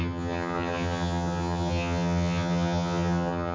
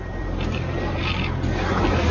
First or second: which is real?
second